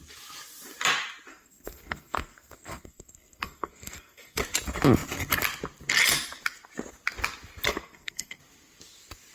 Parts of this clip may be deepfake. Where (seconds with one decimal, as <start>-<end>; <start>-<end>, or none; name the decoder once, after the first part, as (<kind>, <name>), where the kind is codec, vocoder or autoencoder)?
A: 1.3-4.4 (codec, SNAC); 7.7-8.4